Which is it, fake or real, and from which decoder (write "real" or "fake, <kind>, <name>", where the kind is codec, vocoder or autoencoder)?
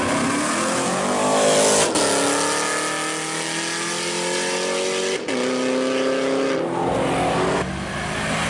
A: real